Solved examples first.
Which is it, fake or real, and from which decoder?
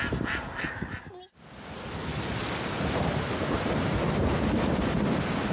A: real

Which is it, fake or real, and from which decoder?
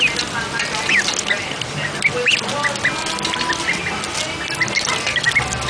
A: real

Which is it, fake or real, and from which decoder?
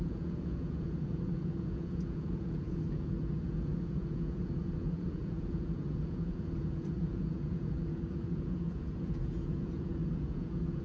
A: fake, vocoder, Vocos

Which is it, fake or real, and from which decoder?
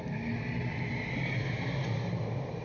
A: real